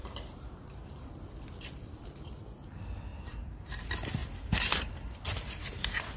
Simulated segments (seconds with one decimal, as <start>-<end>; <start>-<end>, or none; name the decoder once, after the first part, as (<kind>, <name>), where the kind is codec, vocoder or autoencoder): 0.0-1.1 (vocoder, BigVGAN v2); 3.1-3.7; 4.2-4.9; 5.6-6.2